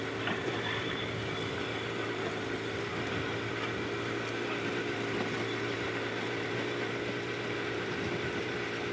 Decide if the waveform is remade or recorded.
recorded